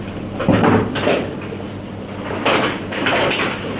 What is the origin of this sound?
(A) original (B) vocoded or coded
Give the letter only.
A